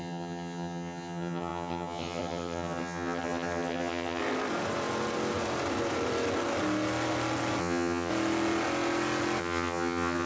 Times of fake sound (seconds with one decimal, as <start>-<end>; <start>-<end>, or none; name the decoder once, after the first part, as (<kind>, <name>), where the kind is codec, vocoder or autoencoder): 0.0-4.2 (vocoder, HiFi-GAN); 7.6-8.1; 9.4-10.3